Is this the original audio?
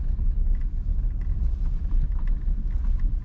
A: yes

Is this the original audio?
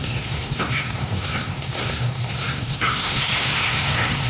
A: no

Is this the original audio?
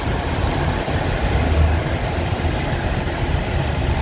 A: yes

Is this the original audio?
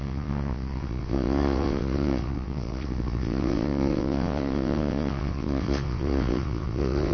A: no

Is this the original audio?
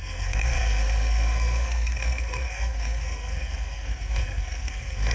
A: no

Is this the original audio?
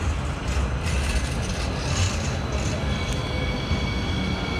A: yes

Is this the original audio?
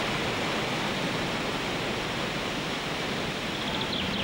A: yes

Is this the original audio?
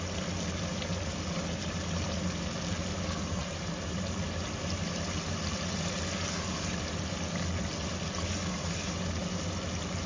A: yes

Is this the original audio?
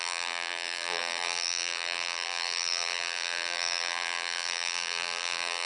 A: no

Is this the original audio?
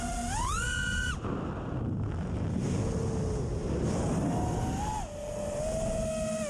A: yes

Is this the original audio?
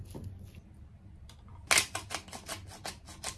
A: yes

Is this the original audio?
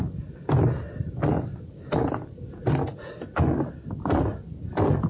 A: yes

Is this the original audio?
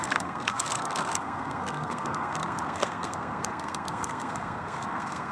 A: no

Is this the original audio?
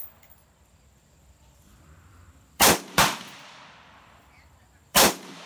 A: no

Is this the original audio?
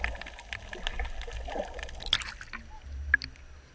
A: yes